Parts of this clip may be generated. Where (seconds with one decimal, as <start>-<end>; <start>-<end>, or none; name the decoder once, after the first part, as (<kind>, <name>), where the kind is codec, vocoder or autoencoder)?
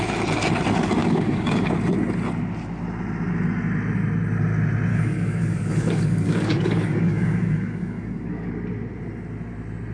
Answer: 1.0-1.7 (codec, DAC); 4.9-8.5